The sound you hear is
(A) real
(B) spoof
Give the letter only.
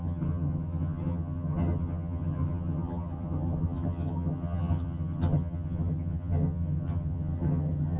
B